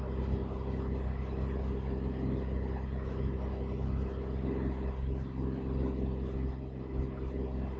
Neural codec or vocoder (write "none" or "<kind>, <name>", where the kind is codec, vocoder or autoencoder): none